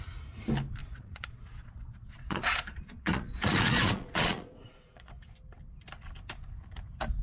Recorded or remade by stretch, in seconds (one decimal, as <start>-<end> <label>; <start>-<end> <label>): 0.0-0.8 recorded; 0.8-5.1 remade; 5.1-7.2 recorded